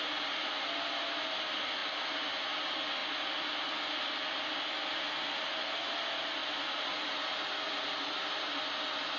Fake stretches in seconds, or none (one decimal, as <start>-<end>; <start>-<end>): none